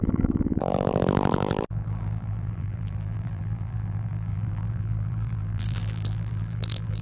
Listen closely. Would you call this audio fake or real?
fake